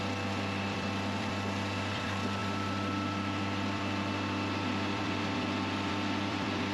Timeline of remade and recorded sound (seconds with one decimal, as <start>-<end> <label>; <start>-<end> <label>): 0.0-6.7 remade